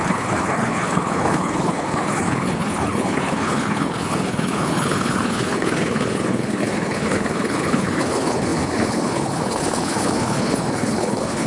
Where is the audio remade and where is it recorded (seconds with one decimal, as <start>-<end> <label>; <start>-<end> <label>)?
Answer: 0.0-11.5 remade